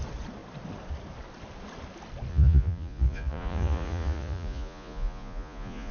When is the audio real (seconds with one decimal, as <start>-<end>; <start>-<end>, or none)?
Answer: 0.0-2.3